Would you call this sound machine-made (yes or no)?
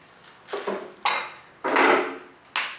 no